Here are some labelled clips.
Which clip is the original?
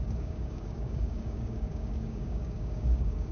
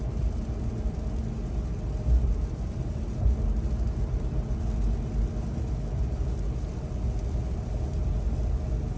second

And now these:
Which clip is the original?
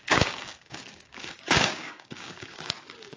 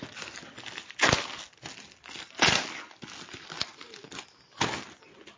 second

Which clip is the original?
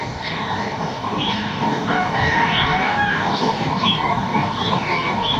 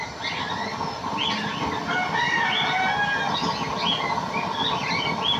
second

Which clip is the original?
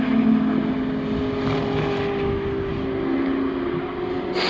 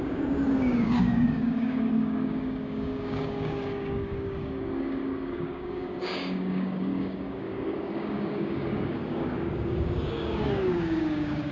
first